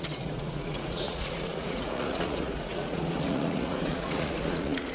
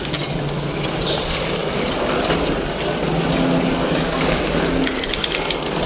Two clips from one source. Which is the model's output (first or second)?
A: first